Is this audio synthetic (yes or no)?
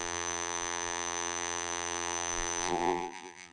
yes